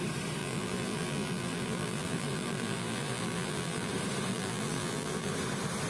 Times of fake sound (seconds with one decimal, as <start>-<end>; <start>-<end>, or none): 0.4-3.9; 4.3-5.3